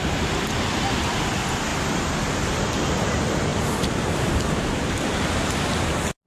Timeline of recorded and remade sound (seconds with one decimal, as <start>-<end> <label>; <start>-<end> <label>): 0.0-3.5 recorded; 3.5-5.1 remade; 5.1-6.3 recorded